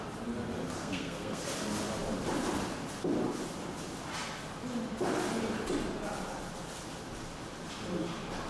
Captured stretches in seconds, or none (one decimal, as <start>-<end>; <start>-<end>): 0.0-0.8; 1.4-8.5